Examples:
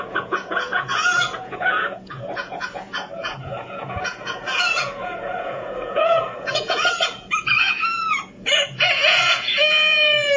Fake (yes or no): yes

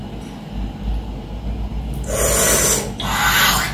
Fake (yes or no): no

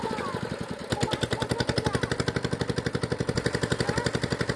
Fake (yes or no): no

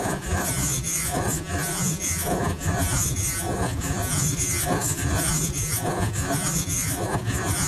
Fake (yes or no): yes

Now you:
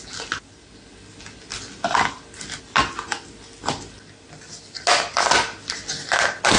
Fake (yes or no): no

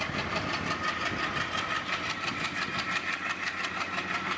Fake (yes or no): no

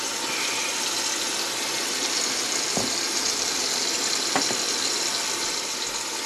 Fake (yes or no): no